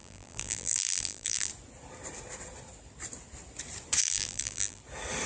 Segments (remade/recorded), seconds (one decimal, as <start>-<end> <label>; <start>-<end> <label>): 0.0-1.5 remade; 1.5-4.0 recorded; 4.0-4.8 remade; 4.8-5.3 recorded